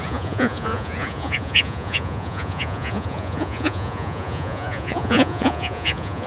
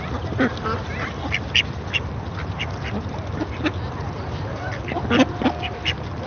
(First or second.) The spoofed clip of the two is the first